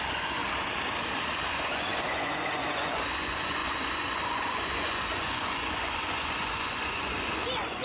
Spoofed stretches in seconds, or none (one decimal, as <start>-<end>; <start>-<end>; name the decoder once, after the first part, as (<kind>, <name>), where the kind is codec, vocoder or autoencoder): 0.0-0.4 (vocoder, Vocos); 1.5-7.8